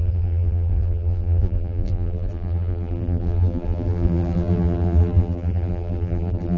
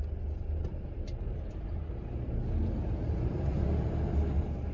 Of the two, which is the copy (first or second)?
first